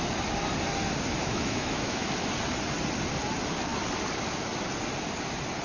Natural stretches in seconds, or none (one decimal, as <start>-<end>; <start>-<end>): 0.0-1.2; 2.1-5.6